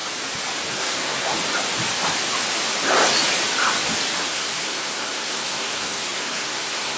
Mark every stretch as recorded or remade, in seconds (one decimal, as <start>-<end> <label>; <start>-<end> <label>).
0.0-0.7 recorded; 0.7-1.3 remade; 1.3-4.2 recorded; 4.2-7.0 remade